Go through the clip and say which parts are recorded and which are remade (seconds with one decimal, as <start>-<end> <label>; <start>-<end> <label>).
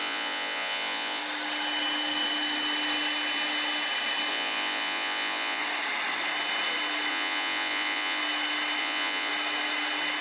0.0-1.2 remade; 1.2-4.3 recorded; 4.3-5.6 remade; 5.6-7.1 recorded; 7.1-8.2 remade; 8.2-8.8 recorded; 8.8-9.3 remade; 9.3-10.2 recorded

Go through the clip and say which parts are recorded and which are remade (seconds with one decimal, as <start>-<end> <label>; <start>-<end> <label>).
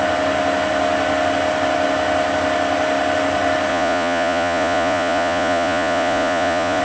0.0-3.7 recorded; 3.7-6.8 remade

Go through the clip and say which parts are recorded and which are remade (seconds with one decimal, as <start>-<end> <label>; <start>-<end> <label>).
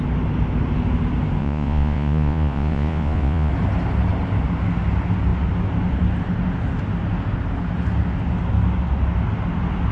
0.0-1.4 recorded; 1.4-3.5 remade; 3.5-9.9 recorded